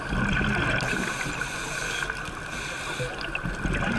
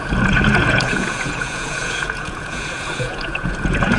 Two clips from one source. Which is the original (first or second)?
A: first